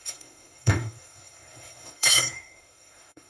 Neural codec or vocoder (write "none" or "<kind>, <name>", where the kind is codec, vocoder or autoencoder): codec, SNAC